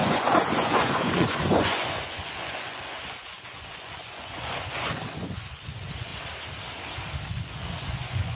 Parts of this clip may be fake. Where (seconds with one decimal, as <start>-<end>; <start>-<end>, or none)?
0.0-6.1; 7.3-8.3